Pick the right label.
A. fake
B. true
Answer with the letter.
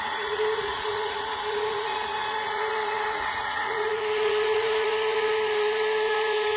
A